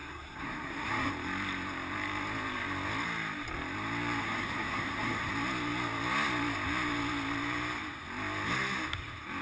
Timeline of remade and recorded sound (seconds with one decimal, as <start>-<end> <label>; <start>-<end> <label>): 0.0-1.1 remade; 1.1-4.2 recorded; 4.2-5.3 remade; 5.3-9.4 recorded